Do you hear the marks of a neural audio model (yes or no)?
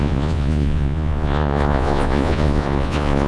yes